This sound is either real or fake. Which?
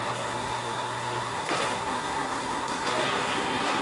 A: fake